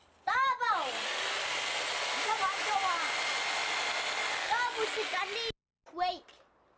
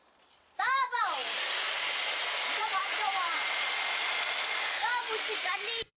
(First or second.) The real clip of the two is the first